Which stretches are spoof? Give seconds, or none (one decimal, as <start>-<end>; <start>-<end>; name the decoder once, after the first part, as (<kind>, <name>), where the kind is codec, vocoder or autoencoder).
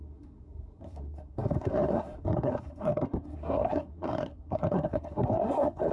0.0-5.9 (codec, SNAC)